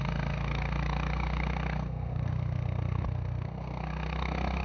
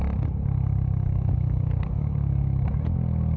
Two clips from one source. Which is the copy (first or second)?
first